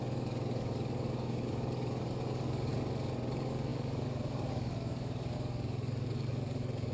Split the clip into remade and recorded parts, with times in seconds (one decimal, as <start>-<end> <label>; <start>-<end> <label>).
0.0-2.7 remade; 2.7-3.3 recorded; 3.3-6.9 remade